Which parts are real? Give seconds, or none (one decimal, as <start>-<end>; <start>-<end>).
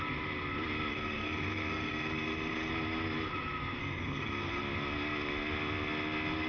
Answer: 0.0-0.9; 2.7-3.8; 4.6-6.5